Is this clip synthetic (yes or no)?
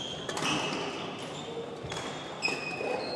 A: no